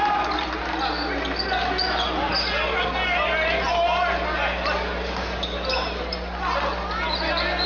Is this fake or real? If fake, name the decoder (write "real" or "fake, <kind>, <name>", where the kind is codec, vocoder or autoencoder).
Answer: real